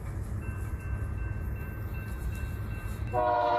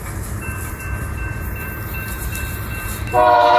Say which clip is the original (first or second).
first